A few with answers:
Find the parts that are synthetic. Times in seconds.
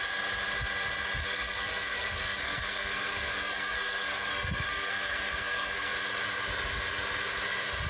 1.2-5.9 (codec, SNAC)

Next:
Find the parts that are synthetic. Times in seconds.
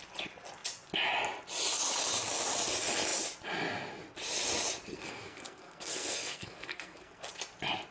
4.9-7.3 (codec, SNAC)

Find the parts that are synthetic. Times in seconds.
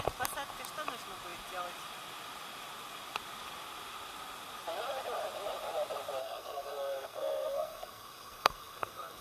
6.2-9.2 (codec, SNAC)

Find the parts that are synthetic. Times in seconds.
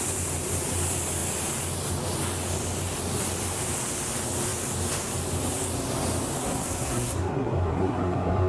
6.4-8.5 (codec, SNAC)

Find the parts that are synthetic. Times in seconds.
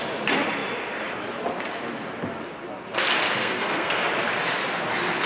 3.4-4.1 (codec, SNAC)